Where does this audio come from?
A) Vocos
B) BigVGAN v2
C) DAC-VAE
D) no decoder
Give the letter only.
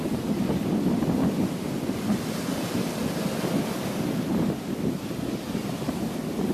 B